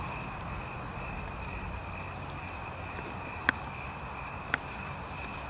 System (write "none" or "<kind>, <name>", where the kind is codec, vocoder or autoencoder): none